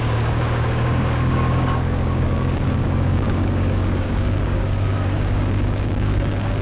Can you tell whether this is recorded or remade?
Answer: remade